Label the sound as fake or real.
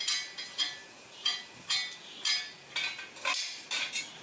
real